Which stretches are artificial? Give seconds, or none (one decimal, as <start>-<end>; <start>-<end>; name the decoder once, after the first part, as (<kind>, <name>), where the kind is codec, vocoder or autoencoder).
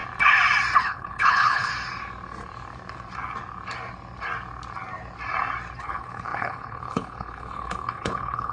0.8-1.7 (codec, HILCodec); 5.8-8.5